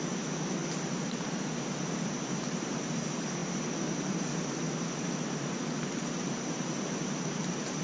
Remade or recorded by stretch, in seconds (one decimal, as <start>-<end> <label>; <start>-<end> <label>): 0.0-7.8 recorded